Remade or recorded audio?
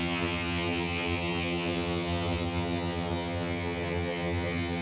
remade